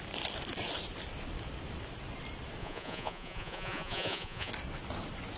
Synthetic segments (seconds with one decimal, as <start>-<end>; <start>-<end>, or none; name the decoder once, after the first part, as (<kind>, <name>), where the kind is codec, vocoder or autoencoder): 2.6-4.5 (vocoder, Vocos)